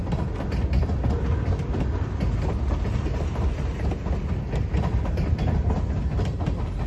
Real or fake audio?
real